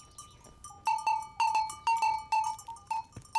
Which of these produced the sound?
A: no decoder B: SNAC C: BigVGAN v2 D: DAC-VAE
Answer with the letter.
A